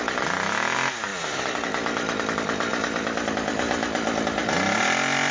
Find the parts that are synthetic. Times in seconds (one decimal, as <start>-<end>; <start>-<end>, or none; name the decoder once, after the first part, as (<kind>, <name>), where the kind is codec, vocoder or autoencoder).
none